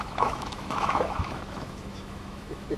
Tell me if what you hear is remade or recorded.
remade